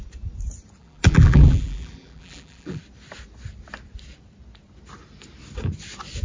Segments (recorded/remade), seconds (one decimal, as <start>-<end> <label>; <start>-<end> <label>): 0.0-0.8 recorded; 0.8-2.8 remade; 2.8-6.2 recorded